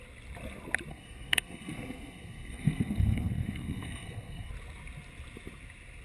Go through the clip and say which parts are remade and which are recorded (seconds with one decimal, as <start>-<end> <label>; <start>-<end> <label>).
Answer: 0.0-0.9 recorded; 0.9-4.5 remade; 4.5-6.0 recorded